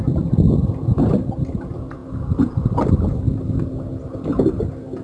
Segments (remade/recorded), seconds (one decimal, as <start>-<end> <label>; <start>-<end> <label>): 0.0-5.0 recorded